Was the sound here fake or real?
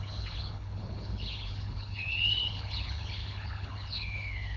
fake